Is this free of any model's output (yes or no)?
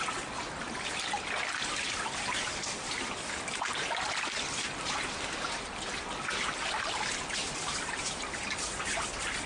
yes